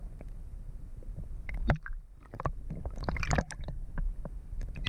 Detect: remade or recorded remade